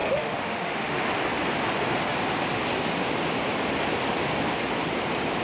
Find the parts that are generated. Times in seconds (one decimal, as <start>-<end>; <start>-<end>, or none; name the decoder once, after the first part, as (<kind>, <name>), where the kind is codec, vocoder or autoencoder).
0.0-1.0 (autoencoder, DAC-VAE)